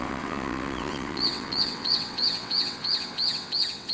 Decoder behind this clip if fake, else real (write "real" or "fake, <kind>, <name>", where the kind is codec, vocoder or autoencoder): fake, vocoder, WaveNeXt